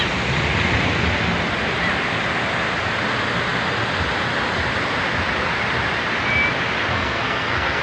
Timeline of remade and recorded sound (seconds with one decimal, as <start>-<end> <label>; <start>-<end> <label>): 0.0-6.9 recorded; 6.9-7.8 remade